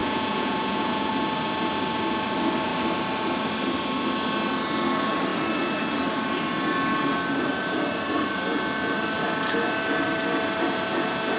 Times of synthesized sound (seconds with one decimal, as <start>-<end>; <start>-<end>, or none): 0.0-1.1